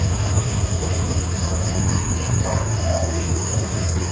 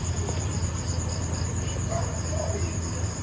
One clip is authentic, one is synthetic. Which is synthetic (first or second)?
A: first